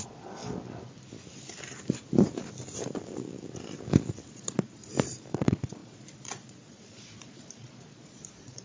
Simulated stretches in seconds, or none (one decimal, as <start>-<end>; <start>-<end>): 0.0-0.4; 4.3-4.8; 5.3-8.6